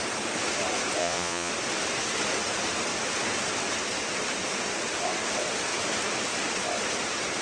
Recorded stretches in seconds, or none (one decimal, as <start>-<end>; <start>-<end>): 0.0-1.0; 1.5-7.4